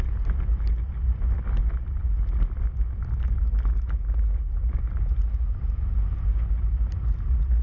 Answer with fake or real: real